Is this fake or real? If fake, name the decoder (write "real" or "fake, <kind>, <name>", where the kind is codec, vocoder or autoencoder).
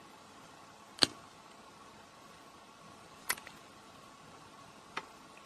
real